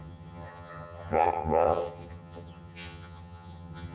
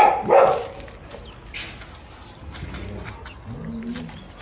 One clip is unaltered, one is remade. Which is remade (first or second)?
first